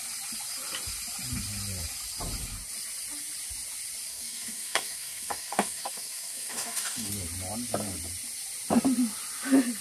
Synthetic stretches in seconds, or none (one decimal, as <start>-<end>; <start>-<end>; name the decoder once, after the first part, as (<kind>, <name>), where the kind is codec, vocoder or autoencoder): 4.1-7.1 (codec, DAC)